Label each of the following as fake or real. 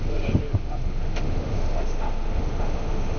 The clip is fake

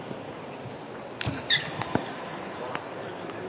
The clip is real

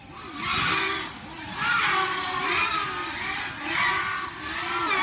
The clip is real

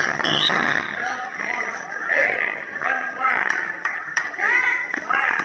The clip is fake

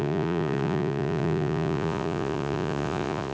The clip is fake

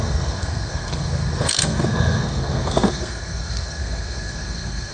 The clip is fake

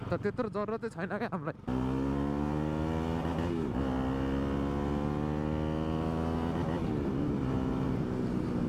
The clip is real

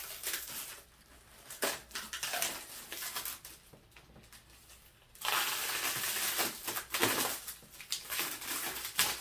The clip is real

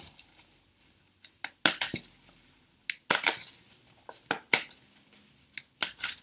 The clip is real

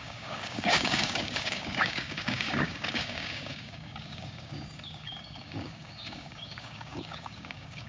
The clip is fake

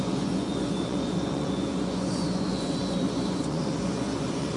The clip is fake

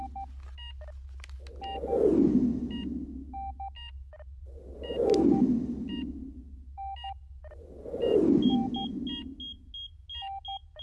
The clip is real